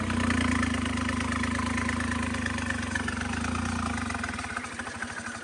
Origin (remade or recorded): recorded